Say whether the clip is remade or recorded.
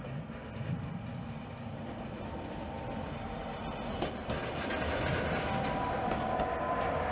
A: recorded